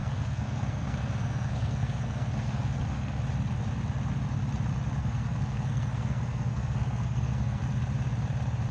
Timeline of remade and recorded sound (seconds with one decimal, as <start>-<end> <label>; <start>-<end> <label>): 0.0-3.2 remade; 3.2-5.0 recorded; 5.0-7.6 remade; 7.6-8.7 recorded